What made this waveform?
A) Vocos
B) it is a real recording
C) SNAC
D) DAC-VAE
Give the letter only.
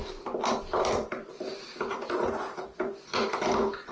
B